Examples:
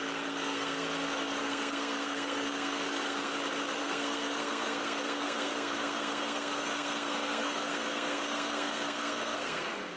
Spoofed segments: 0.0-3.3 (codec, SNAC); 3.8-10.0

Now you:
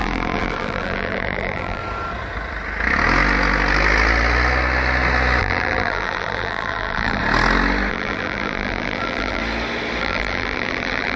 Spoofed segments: 0.0-1.8 (vocoder, BigVGAN v2); 5.4-7.2; 7.9-9.4; 10.0-11.2

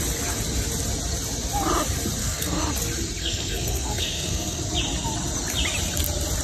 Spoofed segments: 2.2-2.7 (codec, SNAC); 3.2-4.6

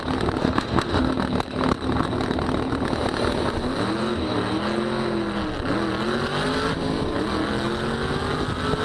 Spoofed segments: 0.4-1.1 (autoencoder, DAC-VAE)

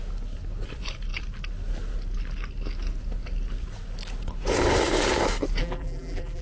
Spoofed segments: 5.6-6.4 (vocoder, BigVGAN v2)

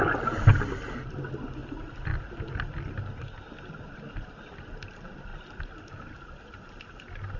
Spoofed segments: none